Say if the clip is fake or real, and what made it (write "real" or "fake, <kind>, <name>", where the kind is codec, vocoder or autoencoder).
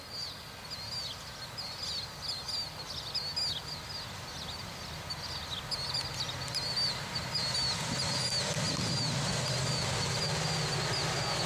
real